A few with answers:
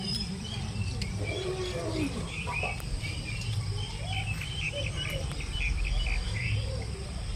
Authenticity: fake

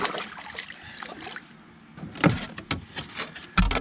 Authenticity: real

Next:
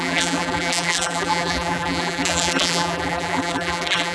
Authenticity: fake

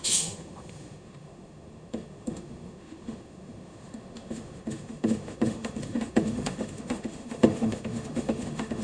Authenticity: fake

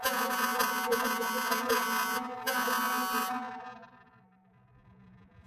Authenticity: fake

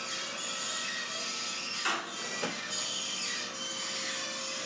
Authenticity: real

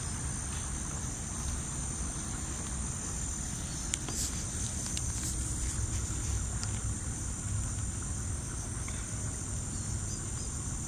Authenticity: real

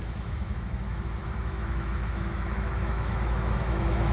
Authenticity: fake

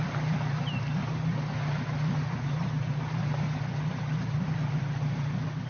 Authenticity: real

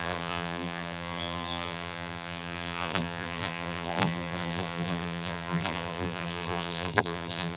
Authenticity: fake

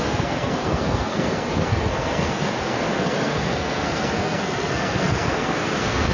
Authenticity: fake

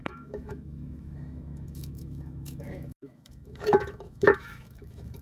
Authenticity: fake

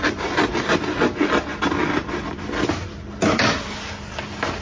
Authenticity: real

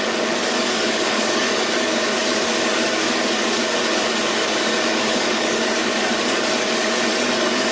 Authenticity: fake